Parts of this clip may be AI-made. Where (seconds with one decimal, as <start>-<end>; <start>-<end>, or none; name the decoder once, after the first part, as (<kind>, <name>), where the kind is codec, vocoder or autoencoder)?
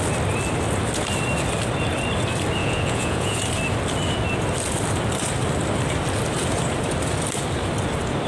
2.6-3.4 (vocoder, Vocos)